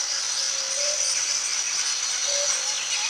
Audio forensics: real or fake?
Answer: real